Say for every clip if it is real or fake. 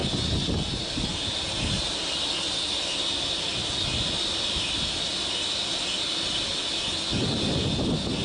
real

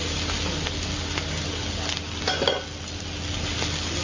real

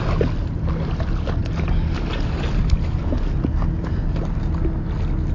real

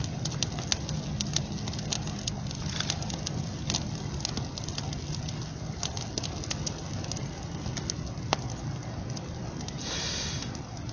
real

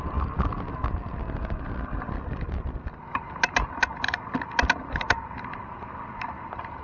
real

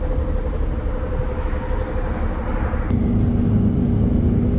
real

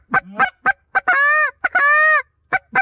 real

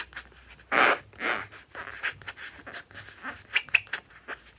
real